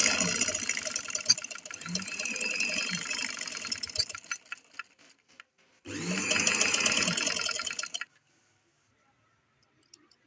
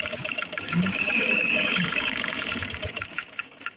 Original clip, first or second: first